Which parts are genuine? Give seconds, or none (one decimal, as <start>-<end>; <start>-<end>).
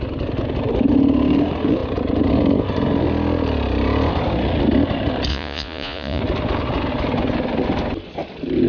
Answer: 0.0-5.3; 6.2-8.7